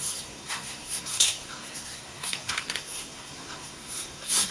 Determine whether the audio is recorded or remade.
remade